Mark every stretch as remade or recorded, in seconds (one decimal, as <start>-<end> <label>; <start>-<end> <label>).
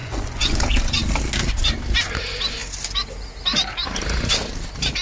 0.0-0.6 remade; 0.6-5.0 recorded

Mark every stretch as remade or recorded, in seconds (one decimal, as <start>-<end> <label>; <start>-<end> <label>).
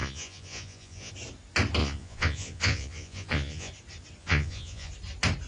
0.0-1.1 remade; 1.1-1.8 recorded; 1.8-3.7 remade; 3.7-4.2 recorded; 4.2-4.9 remade; 4.9-5.5 recorded